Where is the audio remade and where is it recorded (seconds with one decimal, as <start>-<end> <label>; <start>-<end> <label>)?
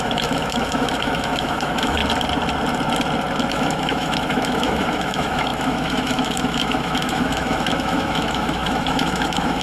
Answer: 0.0-2.0 remade; 2.0-3.5 recorded; 3.5-9.6 remade